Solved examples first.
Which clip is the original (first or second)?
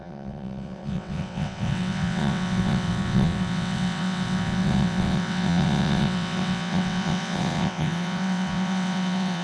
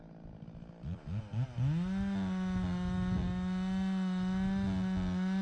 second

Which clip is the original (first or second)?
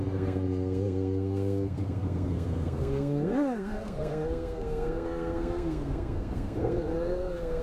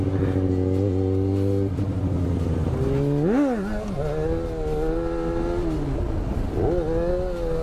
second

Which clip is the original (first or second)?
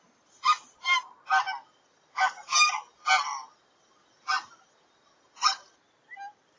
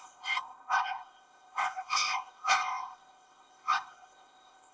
first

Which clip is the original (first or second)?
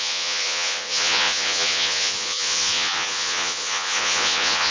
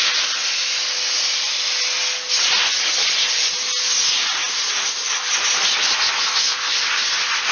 second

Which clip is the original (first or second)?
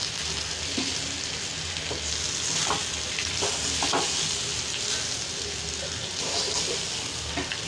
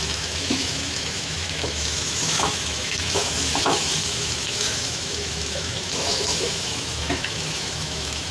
first